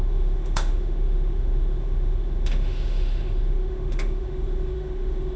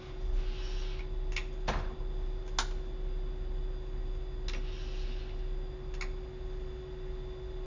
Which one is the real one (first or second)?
second